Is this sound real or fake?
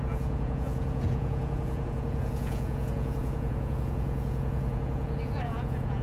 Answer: fake